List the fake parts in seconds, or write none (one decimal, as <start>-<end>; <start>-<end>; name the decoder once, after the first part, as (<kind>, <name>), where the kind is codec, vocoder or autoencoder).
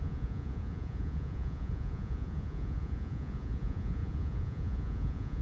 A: 0.0-5.4 (vocoder, Vocos)